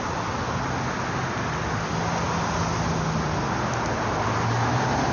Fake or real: real